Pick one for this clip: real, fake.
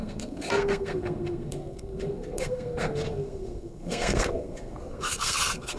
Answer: fake